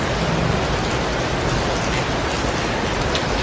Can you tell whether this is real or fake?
real